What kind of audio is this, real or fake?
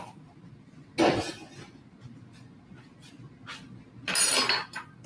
real